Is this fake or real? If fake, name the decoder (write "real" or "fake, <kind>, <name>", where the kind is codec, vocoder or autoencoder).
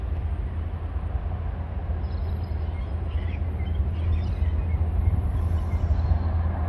real